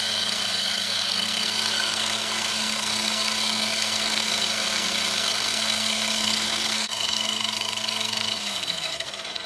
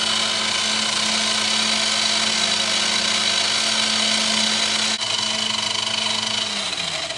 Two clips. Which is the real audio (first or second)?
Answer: second